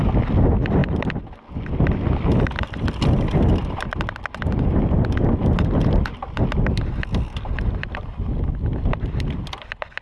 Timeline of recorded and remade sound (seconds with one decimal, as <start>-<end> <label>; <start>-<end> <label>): 0.0-10.0 recorded

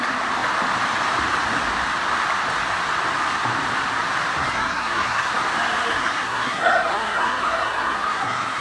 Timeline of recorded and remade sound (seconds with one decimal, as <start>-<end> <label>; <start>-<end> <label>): 0.0-4.4 recorded; 4.4-5.3 remade; 5.3-5.9 recorded; 5.9-8.6 remade